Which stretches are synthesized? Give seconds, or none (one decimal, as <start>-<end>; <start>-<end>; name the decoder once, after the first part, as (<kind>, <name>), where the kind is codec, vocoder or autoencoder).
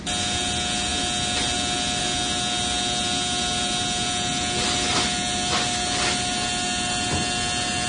none